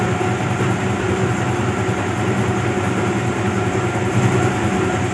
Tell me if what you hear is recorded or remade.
recorded